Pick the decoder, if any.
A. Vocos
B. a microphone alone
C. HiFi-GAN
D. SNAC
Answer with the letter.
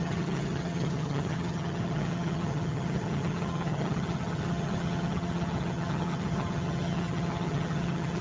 C